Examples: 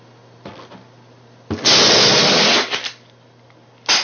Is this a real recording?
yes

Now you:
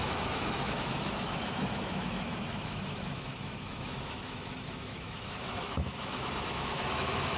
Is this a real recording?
no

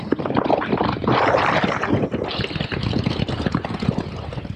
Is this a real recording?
yes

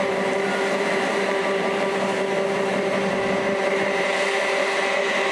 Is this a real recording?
no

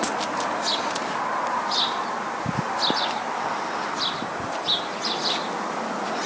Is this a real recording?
yes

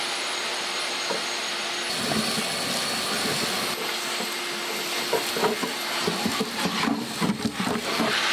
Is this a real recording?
yes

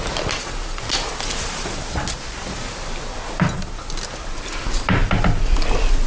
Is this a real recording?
yes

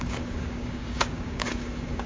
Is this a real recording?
no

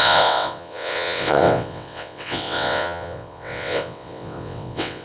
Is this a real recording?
no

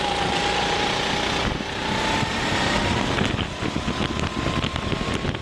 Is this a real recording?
yes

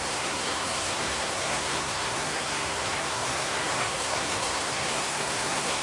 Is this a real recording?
no